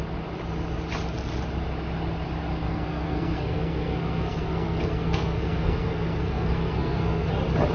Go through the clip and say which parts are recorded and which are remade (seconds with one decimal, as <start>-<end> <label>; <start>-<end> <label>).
0.0-2.7 recorded; 2.7-7.3 remade; 7.3-7.7 recorded